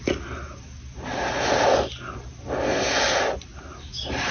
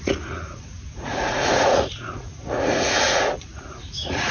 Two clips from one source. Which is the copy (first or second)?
second